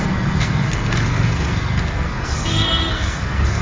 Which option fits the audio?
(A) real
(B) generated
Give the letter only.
B